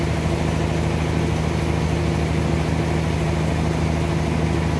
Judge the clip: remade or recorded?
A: recorded